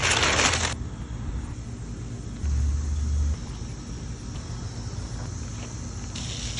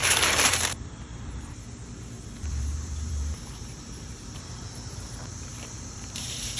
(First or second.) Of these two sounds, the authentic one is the first